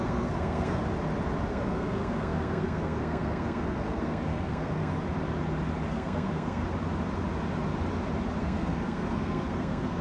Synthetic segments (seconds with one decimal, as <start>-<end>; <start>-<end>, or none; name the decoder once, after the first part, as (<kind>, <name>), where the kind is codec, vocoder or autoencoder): 0.0-0.8 (codec, SNAC); 1.5-4.9; 5.9-6.6; 8.4-10.0